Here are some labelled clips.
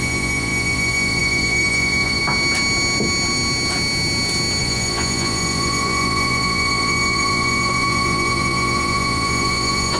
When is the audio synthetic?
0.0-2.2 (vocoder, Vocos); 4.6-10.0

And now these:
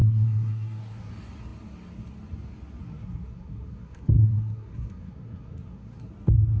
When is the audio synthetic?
0.0-1.1 (codec, SNAC); 2.8-6.1

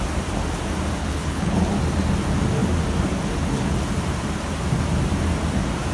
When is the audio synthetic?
1.0-1.7 (codec, HILCodec)

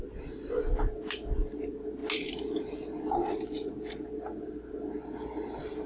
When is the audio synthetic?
none